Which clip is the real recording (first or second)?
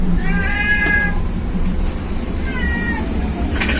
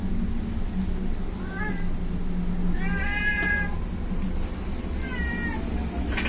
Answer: second